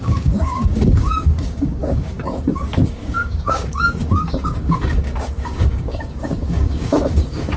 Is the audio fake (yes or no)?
yes